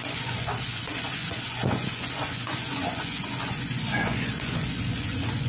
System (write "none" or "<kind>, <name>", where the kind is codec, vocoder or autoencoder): vocoder, Vocos